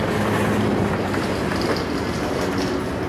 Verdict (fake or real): real